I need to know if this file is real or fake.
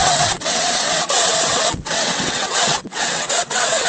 fake